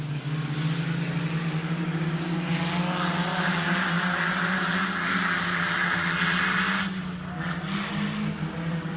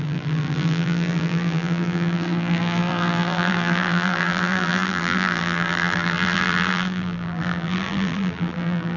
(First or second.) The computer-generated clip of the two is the second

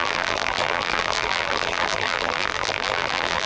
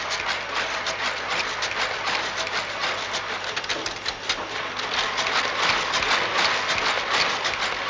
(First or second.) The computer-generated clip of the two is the first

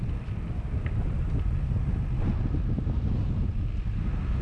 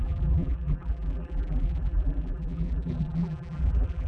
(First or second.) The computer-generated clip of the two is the second